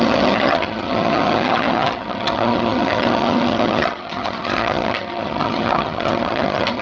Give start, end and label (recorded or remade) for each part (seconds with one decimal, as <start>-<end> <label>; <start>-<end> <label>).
0.0-6.8 remade